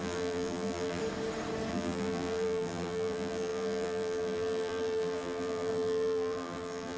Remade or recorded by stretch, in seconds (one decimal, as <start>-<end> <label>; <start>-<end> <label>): 0.0-1.0 remade; 1.0-1.7 recorded; 1.7-7.0 remade